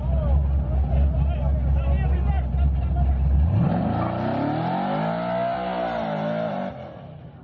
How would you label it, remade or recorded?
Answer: recorded